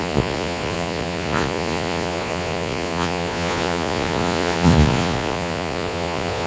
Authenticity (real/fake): fake